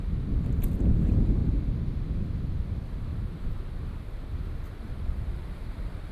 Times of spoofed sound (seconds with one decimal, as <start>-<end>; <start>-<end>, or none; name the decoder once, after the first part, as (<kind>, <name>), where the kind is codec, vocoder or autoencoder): 3.1-6.1 (vocoder, BigVGAN v2)